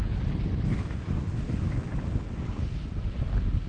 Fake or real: real